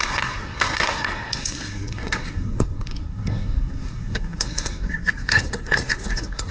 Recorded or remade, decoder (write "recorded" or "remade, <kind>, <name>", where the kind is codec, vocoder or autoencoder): remade, codec, SNAC